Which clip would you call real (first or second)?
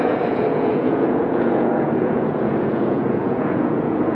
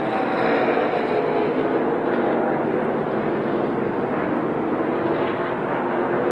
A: second